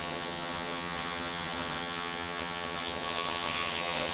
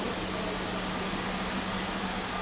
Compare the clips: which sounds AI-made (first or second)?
first